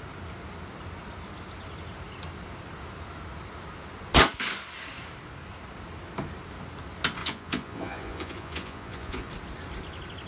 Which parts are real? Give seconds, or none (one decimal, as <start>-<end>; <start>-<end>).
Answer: 0.0-7.2; 9.3-10.3